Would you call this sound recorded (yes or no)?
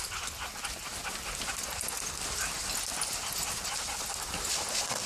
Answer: yes